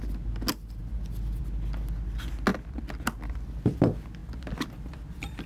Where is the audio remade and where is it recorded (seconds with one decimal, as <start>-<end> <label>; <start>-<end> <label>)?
0.0-5.5 recorded